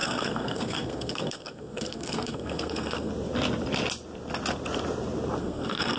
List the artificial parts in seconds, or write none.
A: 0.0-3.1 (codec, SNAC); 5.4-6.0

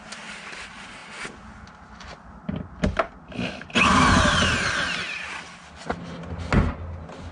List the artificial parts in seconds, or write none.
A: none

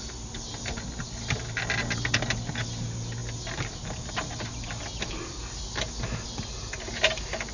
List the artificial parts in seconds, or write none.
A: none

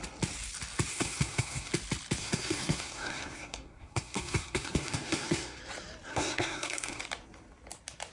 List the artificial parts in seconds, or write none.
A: 0.9-1.7 (codec, SNAC); 2.2-5.6; 6.1-7.0

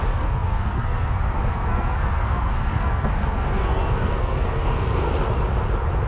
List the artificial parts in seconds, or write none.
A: 0.0-5.1 (codec, SNAC)

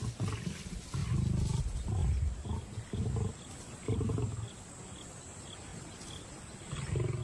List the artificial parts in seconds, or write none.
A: none